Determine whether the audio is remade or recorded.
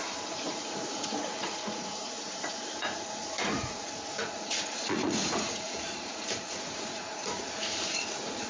remade